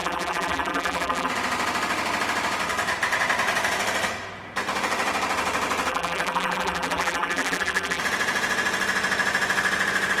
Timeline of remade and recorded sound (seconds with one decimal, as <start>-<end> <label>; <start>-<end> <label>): 0.0-1.3 remade; 1.3-5.9 recorded; 5.9-8.0 remade; 8.0-10.2 recorded